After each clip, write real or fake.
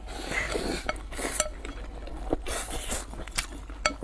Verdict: real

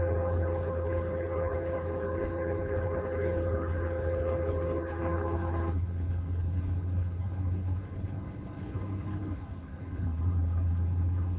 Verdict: fake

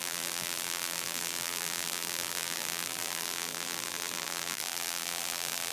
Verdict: fake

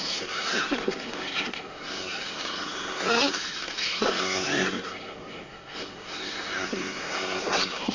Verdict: fake